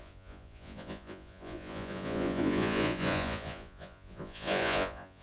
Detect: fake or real fake